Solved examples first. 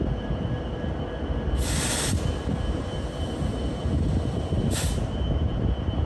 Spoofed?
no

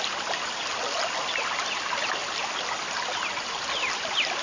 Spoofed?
no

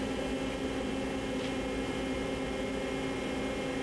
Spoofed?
no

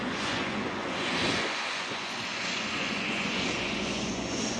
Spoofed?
yes